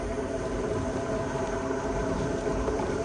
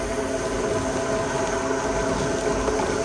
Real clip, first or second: second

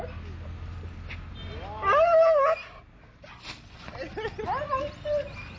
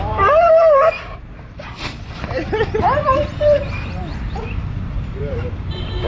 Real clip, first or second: first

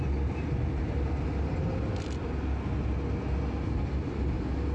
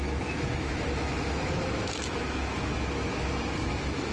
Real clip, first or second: first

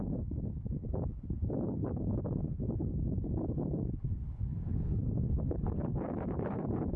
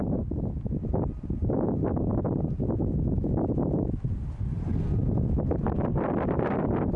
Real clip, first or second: second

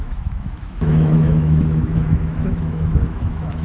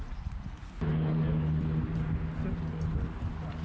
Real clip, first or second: second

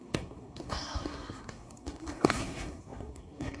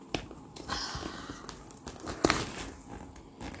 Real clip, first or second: second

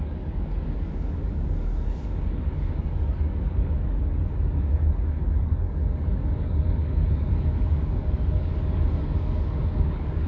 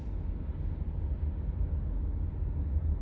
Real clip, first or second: second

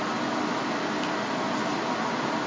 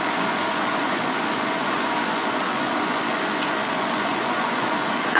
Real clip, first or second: first